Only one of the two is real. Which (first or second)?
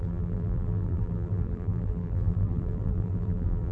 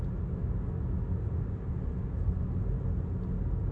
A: second